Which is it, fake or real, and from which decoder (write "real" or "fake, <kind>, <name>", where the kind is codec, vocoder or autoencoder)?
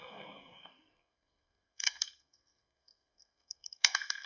fake, codec, SNAC